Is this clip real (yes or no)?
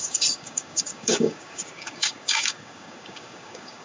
no